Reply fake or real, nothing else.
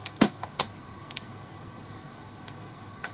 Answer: fake